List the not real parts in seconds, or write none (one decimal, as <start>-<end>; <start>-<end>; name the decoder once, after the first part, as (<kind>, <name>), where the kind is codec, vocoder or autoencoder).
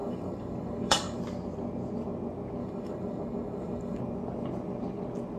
0.0-1.2 (codec, DAC); 2.6-4.0